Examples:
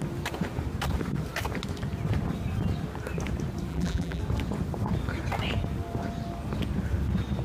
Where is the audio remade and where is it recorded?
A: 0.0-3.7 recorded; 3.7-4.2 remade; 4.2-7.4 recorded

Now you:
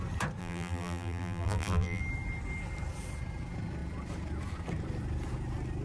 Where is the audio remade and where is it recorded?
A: 0.0-0.4 recorded; 0.4-2.0 remade; 2.0-5.8 recorded

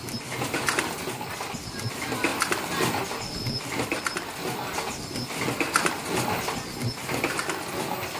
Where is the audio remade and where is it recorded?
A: 0.0-8.2 recorded

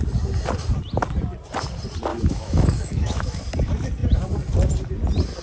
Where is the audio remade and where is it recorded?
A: 0.0-2.1 recorded; 2.1-3.4 remade; 3.4-5.4 recorded

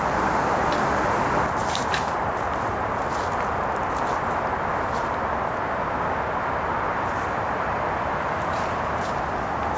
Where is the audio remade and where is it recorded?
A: 0.0-1.6 recorded; 1.6-2.8 remade; 2.8-9.8 recorded